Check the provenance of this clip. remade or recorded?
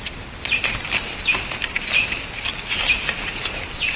recorded